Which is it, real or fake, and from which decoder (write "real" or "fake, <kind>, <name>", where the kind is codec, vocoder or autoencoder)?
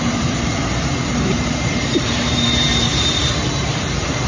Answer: fake, vocoder, BigVGAN v2